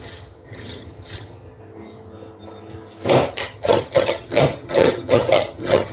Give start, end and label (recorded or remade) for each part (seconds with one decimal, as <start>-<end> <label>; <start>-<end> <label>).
0.0-1.6 remade; 1.6-3.3 recorded; 3.3-5.9 remade

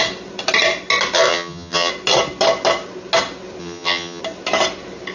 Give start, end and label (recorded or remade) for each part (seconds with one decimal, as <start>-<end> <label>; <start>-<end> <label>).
0.0-1.3 recorded; 1.3-1.9 remade; 1.9-3.6 recorded; 3.6-4.2 remade; 4.2-5.1 recorded

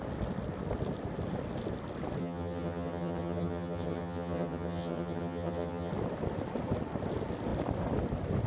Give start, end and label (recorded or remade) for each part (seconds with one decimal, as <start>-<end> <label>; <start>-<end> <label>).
0.0-2.2 recorded; 2.2-5.9 remade; 5.9-8.5 recorded

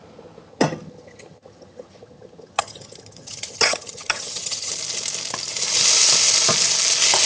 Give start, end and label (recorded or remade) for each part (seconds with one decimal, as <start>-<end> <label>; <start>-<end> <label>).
0.0-0.5 recorded; 0.5-4.7 remade; 4.7-7.3 recorded

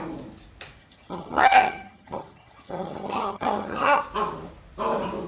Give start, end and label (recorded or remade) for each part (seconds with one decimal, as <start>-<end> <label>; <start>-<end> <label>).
0.0-0.8 recorded; 0.8-4.0 remade; 4.0-5.3 recorded

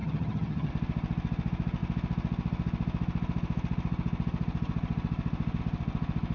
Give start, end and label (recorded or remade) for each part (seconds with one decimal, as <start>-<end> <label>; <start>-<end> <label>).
0.0-0.7 remade; 0.7-6.3 recorded